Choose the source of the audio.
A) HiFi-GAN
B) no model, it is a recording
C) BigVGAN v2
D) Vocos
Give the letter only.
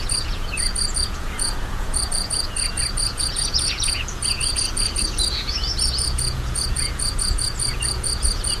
D